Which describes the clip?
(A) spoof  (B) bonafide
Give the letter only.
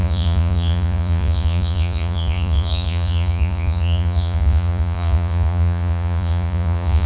A